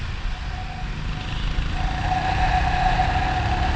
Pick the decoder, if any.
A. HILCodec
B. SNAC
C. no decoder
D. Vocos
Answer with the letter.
C